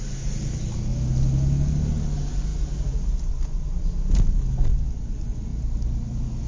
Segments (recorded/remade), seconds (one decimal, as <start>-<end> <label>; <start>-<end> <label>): 0.0-6.5 recorded